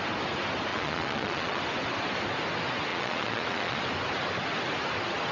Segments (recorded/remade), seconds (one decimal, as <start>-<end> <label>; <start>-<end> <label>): 0.0-0.7 recorded; 0.7-1.6 remade; 1.6-2.9 recorded; 2.9-3.8 remade; 3.8-5.3 recorded